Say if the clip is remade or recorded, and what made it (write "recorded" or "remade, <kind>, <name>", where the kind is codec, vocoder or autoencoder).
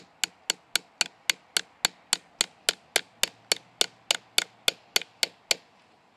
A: recorded